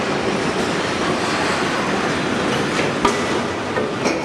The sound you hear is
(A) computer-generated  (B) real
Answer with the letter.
B